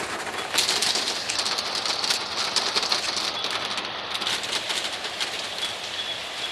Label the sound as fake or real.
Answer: real